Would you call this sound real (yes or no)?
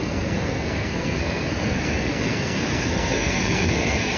no